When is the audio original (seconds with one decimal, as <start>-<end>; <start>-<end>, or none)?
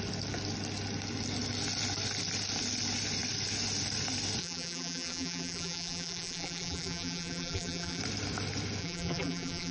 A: 0.0-4.4; 8.0-8.8